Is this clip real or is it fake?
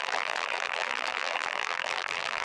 fake